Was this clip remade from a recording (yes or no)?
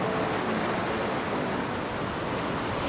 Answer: no